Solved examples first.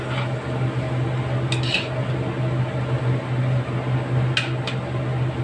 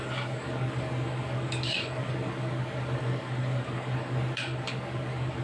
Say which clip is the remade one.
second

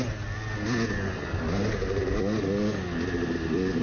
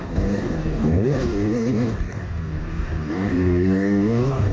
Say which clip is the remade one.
second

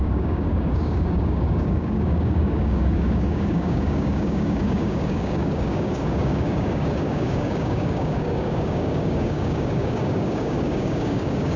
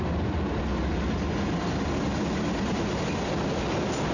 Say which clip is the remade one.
first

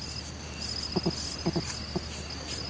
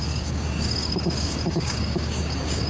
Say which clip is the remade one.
second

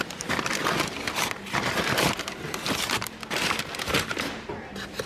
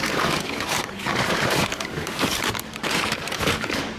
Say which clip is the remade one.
second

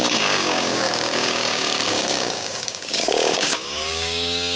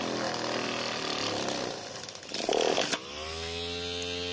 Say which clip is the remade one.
first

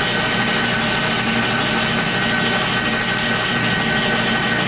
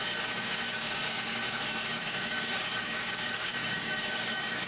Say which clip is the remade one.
second